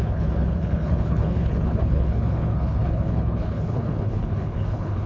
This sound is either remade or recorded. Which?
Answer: remade